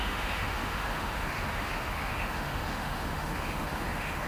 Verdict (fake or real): fake